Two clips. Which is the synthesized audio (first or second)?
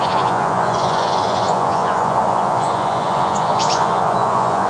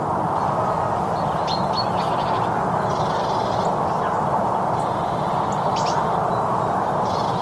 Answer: first